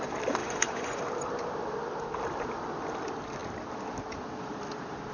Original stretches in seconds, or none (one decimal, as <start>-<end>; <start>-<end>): 0.0-0.4; 1.0-5.1